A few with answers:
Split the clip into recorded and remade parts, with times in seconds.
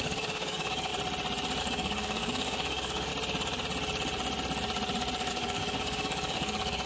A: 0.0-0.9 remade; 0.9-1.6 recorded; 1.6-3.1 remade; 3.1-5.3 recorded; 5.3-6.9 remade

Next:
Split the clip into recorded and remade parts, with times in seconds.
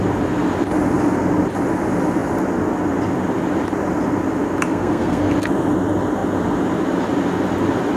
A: 0.0-4.7 recorded; 4.7-5.3 remade; 5.3-8.0 recorded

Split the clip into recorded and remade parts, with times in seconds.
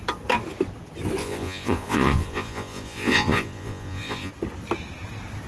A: 0.0-1.2 recorded; 1.2-4.3 remade; 4.3-5.5 recorded